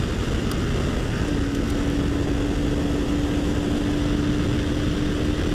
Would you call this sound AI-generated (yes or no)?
no